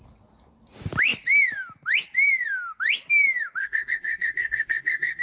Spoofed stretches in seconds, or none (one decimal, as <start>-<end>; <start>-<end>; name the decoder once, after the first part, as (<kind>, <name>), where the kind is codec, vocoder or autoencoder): 3.6-5.2 (codec, SNAC)